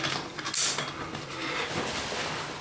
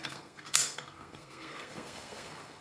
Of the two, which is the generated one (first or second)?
second